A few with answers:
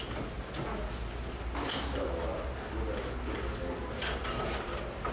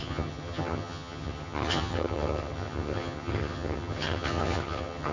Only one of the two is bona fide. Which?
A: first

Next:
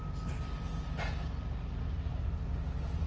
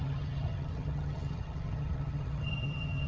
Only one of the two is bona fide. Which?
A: first